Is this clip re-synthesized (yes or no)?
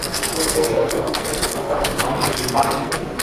yes